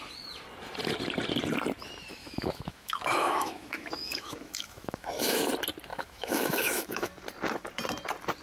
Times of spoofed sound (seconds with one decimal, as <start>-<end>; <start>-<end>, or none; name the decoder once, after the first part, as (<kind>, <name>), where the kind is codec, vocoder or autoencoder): 2.2-5.5 (autoencoder, DAC-VAE); 5.9-7.1